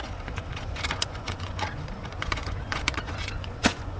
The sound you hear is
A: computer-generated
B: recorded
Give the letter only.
A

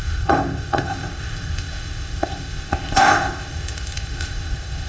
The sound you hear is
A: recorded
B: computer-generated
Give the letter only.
B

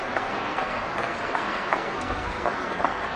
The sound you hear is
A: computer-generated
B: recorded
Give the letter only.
A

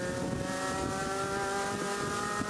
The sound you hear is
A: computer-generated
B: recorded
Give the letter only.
B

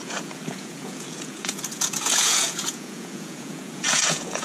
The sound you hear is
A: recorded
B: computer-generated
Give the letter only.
B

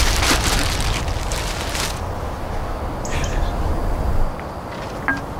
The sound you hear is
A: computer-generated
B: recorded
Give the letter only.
B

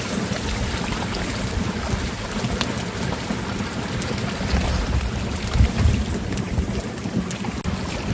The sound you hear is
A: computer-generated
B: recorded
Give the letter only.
B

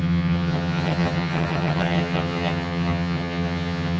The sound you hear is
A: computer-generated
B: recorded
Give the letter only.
A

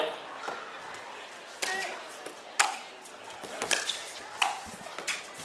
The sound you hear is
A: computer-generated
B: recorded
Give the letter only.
B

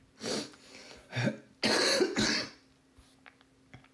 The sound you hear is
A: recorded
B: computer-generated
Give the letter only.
A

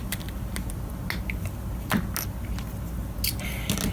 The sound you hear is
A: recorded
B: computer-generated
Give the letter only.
A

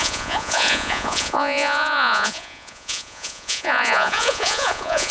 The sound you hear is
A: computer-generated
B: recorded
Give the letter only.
A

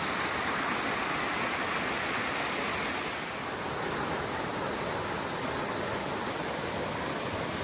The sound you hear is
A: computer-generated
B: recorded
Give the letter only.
B